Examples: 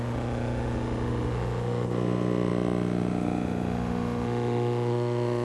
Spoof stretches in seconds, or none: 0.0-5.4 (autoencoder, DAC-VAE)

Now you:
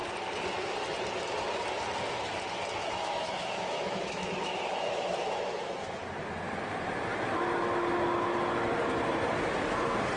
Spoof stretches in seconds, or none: 2.8-6.0 (autoencoder, DAC-VAE)

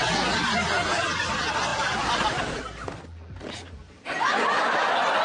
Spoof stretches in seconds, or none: none

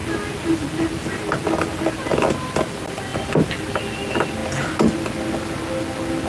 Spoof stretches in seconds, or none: none

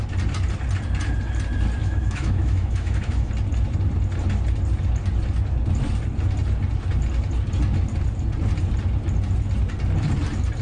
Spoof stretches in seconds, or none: 1.8-3.3 (autoencoder, DAC-VAE)

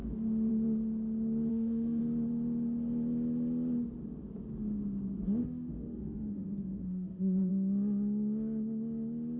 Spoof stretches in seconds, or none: 1.5-2.0 (autoencoder, DAC-VAE); 5.4-7.5